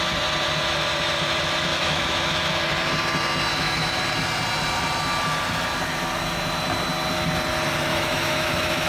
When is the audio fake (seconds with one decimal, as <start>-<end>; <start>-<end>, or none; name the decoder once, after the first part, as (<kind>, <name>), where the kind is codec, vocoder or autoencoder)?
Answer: 1.7-2.5 (autoencoder, DAC-VAE); 3.5-4.0; 7.9-8.9